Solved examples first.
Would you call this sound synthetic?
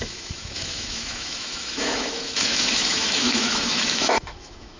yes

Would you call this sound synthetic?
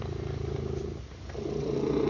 no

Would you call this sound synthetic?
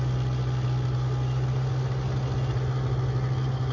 no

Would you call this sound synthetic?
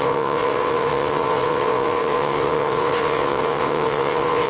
yes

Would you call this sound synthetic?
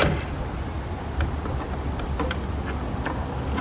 no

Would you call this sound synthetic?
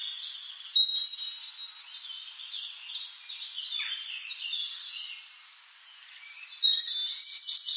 no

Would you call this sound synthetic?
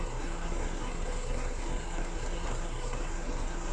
yes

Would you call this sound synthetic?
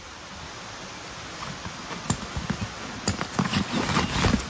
no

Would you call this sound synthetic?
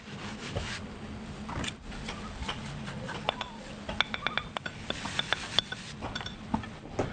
no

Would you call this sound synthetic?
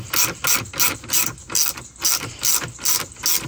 no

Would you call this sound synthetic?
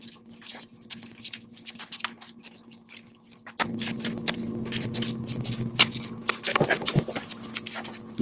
no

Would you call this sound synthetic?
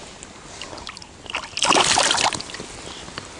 no